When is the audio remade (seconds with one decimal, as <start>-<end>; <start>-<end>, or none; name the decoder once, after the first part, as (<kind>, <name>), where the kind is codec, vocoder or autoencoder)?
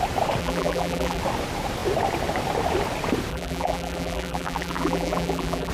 0.4-1.2 (vocoder, BigVGAN v2); 3.3-5.7